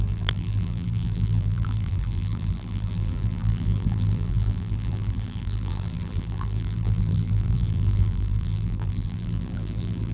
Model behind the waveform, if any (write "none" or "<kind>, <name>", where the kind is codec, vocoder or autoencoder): vocoder, BigVGAN v2